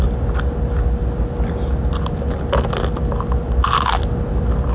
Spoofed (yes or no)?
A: no